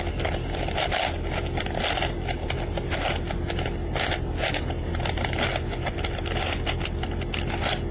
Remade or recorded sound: recorded